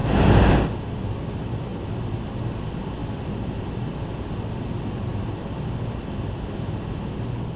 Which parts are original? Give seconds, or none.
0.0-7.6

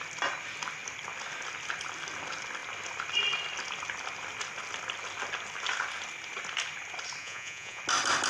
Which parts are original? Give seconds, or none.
0.0-7.2; 7.8-8.3

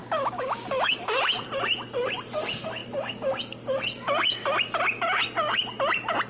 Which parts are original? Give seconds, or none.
1.2-6.3

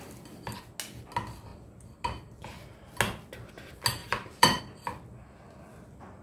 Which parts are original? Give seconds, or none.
0.0-4.0; 4.6-6.2

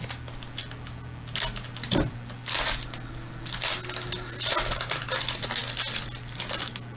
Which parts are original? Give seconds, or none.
0.0-7.0